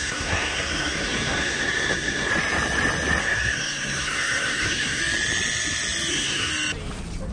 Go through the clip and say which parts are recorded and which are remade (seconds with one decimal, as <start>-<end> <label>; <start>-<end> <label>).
0.0-2.3 remade; 2.3-3.2 recorded; 3.2-5.0 remade; 5.0-6.1 recorded; 6.1-6.5 remade; 6.5-7.3 recorded